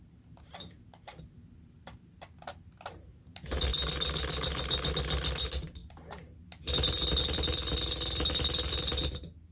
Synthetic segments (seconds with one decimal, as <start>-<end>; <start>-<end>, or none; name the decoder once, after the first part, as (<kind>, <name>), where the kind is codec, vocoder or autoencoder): none